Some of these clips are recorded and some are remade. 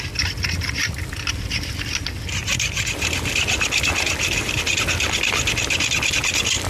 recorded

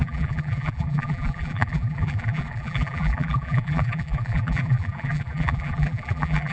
remade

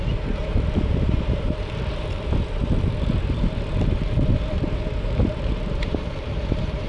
remade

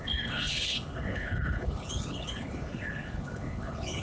remade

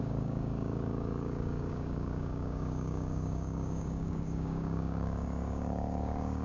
remade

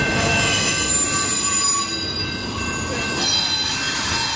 recorded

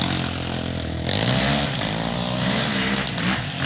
recorded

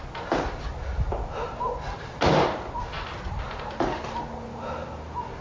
recorded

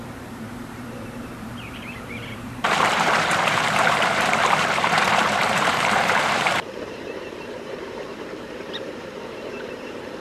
remade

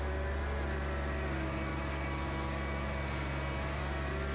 recorded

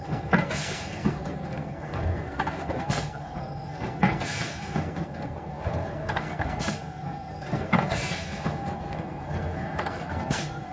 remade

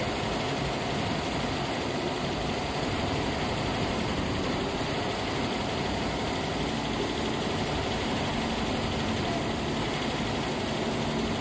recorded